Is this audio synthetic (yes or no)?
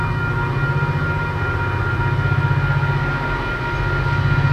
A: no